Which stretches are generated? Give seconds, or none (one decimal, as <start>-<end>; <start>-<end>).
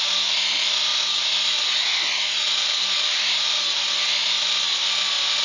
none